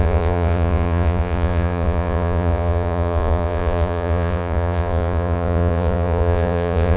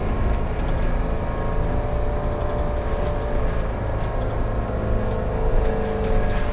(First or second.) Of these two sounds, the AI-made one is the first